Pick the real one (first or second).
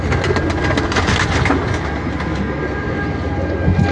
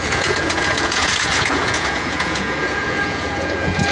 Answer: first